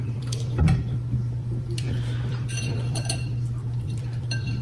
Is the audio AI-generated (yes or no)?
yes